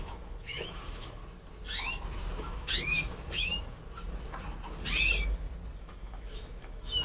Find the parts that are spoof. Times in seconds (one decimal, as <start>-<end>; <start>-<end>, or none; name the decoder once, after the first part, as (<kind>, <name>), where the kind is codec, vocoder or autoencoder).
0.0-1.2 (autoencoder, DAC-VAE); 2.4-3.8; 5.8-7.0